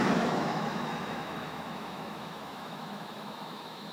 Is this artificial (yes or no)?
yes